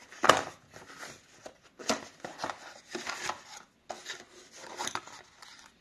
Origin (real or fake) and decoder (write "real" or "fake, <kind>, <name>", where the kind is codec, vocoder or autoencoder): real